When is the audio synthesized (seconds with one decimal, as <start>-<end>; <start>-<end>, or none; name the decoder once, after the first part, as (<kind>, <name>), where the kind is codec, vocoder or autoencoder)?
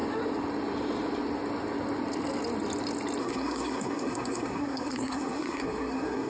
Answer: 3.2-6.3 (codec, SNAC)